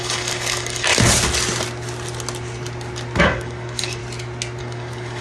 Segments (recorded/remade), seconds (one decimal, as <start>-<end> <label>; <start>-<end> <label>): 0.0-0.9 remade; 0.9-3.2 recorded; 3.2-4.0 remade; 4.0-4.6 recorded; 4.6-5.2 remade